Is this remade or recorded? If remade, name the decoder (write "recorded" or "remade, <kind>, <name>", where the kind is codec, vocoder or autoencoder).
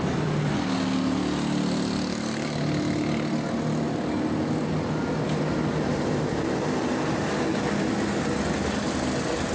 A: recorded